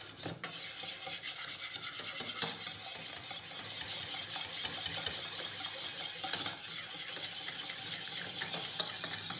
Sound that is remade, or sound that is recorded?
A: recorded